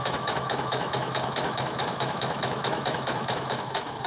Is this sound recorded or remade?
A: remade